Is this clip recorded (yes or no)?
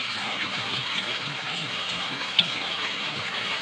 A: no